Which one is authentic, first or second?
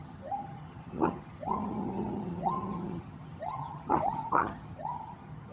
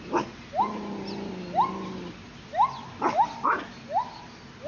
second